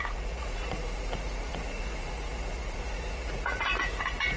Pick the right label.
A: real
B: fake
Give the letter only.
B